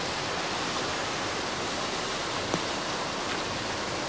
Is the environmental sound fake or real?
real